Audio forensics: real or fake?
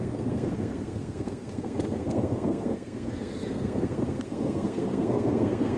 fake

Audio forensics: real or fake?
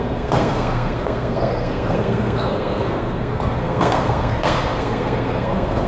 fake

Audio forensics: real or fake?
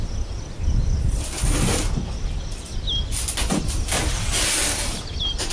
real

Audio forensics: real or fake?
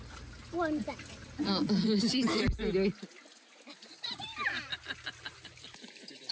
real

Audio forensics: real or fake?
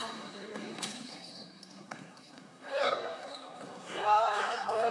fake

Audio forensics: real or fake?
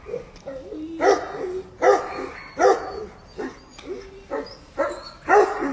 real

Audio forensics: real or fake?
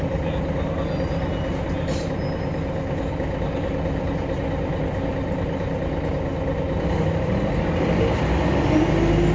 real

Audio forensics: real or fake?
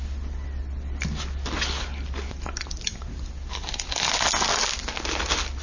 real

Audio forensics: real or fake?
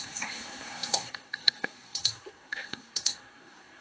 fake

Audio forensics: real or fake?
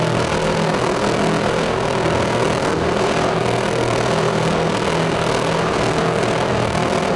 fake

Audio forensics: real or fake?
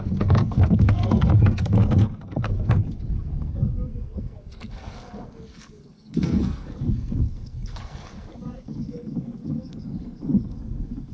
fake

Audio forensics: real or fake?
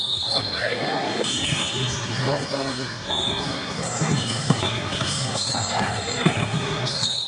fake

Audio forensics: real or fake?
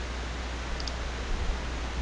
real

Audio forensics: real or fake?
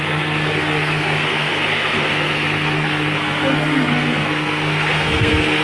fake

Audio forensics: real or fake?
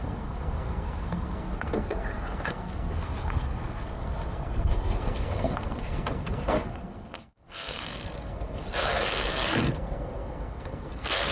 fake